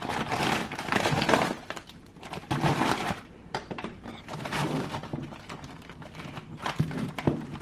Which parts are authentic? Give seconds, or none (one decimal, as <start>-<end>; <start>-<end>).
0.0-0.6; 4.8-6.6